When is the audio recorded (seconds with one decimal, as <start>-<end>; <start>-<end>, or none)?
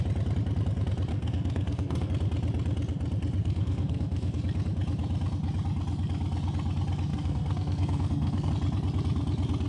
0.0-1.1; 2.1-3.4; 4.4-7.1; 8.5-9.7